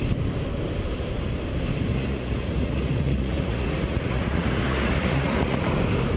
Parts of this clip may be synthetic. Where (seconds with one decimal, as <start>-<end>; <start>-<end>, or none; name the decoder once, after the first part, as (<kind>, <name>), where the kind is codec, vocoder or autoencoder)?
1.9-5.6 (vocoder, Vocos)